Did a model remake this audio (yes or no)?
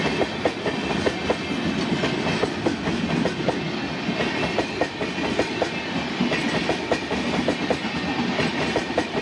no